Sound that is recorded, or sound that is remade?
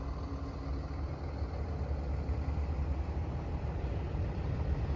recorded